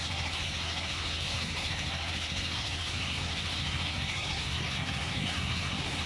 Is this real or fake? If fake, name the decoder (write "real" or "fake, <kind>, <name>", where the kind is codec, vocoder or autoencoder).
fake, codec, SNAC